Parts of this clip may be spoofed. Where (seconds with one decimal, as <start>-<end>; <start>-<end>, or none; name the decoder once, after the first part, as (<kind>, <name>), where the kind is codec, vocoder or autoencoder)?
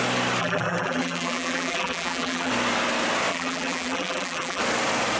0.4-2.5 (vocoder, BigVGAN v2); 3.3-4.6